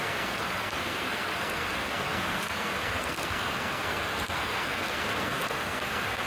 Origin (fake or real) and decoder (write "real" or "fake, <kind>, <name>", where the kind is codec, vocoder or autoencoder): fake, codec, SNAC